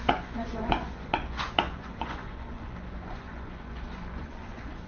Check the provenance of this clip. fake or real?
fake